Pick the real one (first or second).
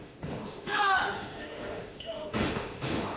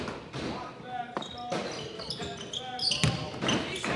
second